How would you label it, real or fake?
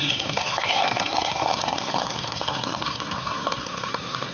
fake